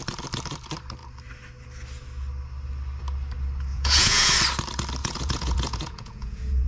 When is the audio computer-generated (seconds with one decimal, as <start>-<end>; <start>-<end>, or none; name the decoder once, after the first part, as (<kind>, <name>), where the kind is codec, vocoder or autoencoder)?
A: 3.7-4.3 (vocoder, Vocos); 5.0-6.7